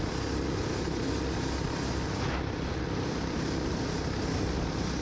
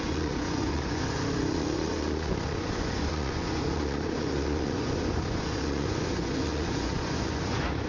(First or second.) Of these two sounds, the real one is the first